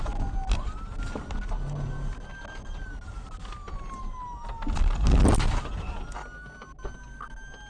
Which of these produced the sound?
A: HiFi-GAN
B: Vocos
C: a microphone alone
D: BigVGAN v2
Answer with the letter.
C